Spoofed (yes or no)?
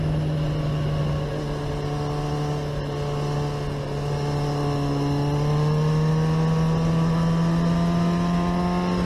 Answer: no